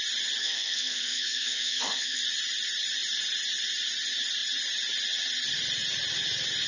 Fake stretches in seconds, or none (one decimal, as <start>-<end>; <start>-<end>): 0.4-2.2